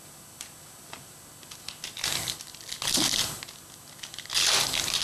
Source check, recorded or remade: recorded